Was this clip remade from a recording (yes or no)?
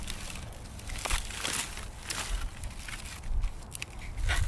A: no